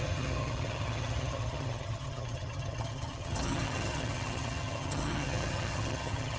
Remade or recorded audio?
remade